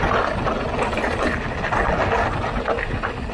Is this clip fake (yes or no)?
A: no